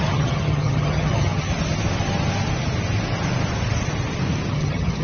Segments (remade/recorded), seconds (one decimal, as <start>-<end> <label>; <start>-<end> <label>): 0.0-1.5 remade; 1.5-4.5 recorded; 4.5-5.0 remade